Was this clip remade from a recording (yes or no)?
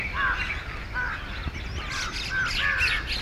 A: no